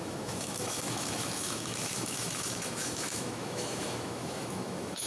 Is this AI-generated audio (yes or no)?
yes